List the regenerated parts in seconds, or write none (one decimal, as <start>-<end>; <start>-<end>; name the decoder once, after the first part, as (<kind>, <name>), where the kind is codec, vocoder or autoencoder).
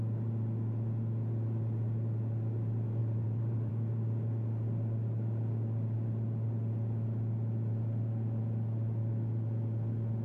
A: 3.0-3.7 (vocoder, BigVGAN v2)